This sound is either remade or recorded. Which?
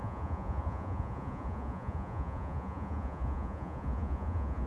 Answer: remade